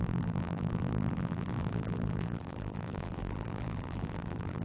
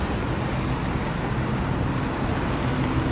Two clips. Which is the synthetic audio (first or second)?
first